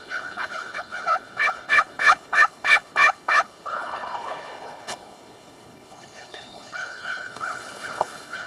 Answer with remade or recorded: remade